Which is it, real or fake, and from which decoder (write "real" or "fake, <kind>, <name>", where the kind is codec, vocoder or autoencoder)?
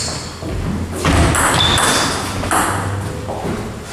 real